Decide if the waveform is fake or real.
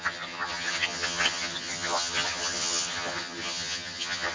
fake